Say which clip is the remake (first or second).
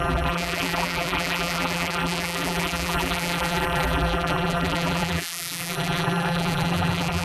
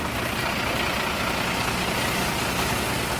first